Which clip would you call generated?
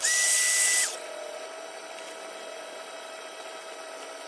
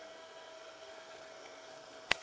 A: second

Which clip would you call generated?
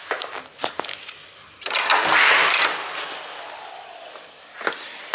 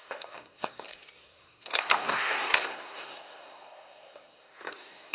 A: second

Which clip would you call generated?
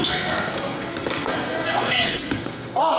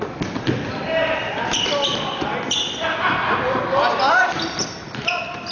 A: first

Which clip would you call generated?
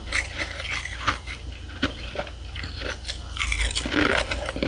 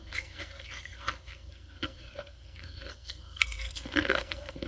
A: second